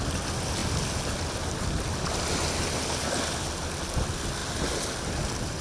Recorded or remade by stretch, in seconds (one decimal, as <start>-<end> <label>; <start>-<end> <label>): 0.0-5.6 recorded